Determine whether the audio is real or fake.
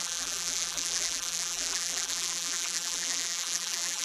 fake